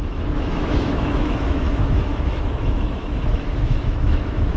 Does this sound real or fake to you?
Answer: fake